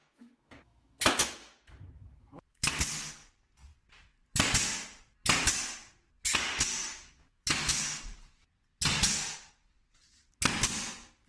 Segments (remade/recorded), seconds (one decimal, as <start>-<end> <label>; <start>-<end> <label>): 0.0-2.7 remade; 2.7-6.9 recorded; 6.9-7.8 remade; 7.8-11.3 recorded